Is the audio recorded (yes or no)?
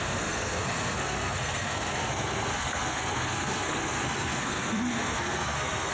no